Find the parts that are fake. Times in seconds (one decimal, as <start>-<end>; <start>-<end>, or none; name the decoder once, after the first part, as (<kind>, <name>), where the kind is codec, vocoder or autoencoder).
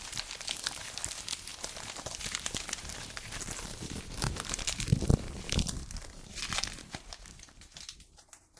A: none